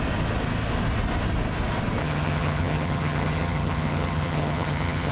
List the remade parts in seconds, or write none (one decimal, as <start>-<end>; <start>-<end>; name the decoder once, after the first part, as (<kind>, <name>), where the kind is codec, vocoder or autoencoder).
2.0-5.1 (vocoder, HiFi-GAN)